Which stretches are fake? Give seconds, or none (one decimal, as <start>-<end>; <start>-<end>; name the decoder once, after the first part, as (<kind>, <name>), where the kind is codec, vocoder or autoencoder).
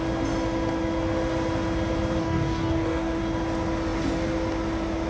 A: 2.2-3.2 (codec, DAC)